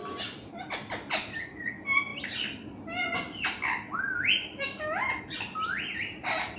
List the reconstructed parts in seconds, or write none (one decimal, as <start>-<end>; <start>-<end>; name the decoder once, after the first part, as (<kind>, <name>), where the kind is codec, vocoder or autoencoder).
none